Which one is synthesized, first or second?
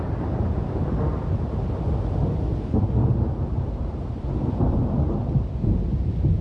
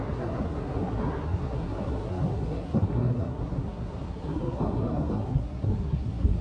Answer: second